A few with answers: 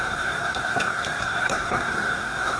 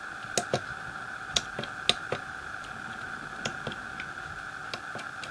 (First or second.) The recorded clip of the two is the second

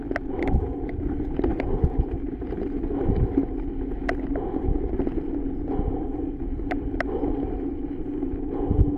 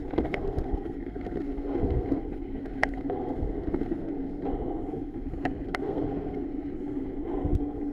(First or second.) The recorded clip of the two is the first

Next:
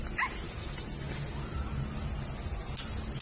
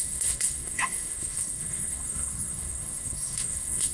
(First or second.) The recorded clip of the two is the first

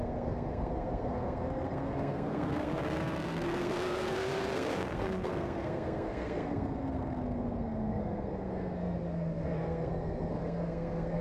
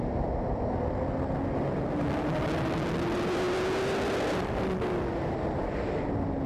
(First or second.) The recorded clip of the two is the second